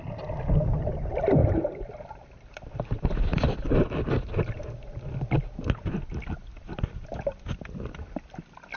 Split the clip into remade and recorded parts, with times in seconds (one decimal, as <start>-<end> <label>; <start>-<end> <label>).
0.0-1.4 recorded; 1.4-2.5 remade; 2.5-8.8 recorded